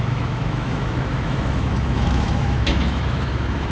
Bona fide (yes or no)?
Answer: no